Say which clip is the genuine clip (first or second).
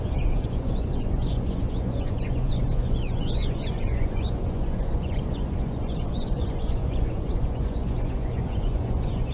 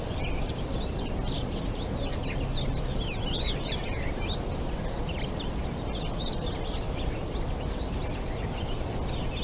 second